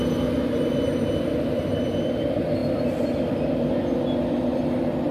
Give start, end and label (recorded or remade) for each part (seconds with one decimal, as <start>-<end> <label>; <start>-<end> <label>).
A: 0.0-5.1 recorded